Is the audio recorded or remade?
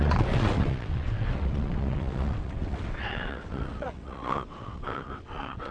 remade